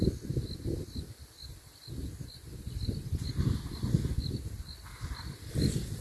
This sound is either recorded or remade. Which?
recorded